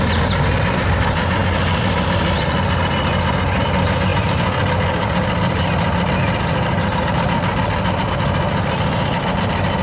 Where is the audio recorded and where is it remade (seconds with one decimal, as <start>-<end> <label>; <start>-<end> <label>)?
0.0-9.8 recorded